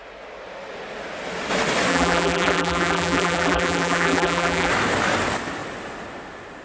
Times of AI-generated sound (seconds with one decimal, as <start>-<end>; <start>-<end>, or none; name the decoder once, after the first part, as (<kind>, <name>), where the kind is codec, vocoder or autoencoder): 1.9-4.7 (vocoder, BigVGAN v2)